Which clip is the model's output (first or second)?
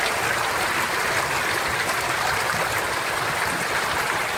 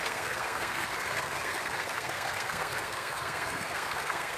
second